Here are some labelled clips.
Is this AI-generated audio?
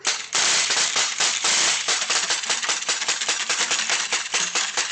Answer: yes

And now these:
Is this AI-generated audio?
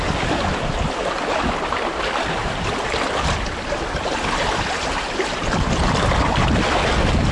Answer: no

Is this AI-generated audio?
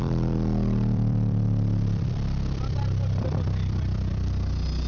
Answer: yes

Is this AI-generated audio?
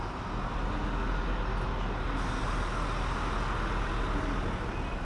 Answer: no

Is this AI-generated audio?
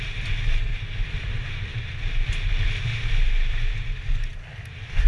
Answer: no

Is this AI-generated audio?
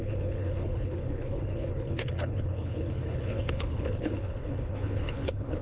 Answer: yes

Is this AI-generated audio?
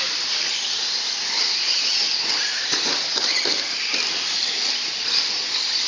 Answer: no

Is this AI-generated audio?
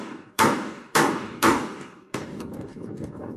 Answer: yes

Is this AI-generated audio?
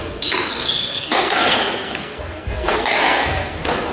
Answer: yes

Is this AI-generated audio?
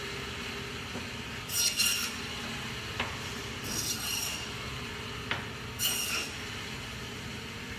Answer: no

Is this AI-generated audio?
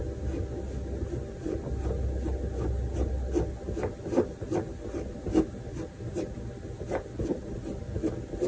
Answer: no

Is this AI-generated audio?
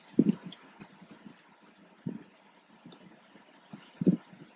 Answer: no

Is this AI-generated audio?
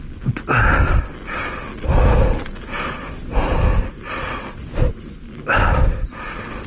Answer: no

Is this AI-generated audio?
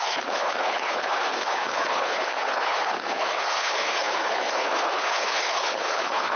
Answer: yes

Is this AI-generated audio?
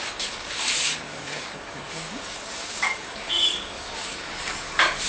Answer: yes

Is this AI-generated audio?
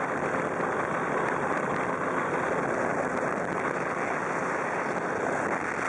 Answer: no